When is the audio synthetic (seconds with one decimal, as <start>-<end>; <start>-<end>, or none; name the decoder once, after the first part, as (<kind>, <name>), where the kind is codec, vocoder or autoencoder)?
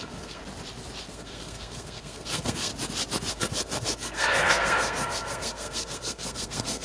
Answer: 0.0-0.4 (codec, SNAC); 1.1-2.7; 3.3-6.8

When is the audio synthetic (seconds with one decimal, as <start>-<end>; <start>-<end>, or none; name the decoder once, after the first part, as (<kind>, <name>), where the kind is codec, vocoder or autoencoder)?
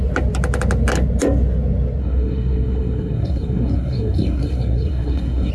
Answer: 2.0-5.5 (codec, SNAC)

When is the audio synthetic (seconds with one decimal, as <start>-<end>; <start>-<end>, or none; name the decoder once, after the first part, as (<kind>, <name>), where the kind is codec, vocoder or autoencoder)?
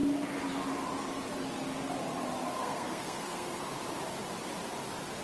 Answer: 2.6-3.6 (codec, SNAC)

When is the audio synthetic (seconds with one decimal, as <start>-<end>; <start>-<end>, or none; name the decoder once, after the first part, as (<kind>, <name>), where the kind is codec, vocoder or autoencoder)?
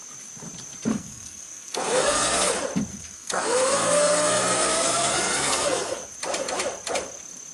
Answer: 0.9-2.5 (codec, SNAC); 2.9-6.1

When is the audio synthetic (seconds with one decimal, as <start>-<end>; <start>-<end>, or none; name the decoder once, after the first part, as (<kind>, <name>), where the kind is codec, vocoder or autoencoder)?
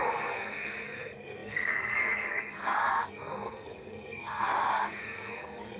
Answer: 0.0-5.8 (codec, SNAC)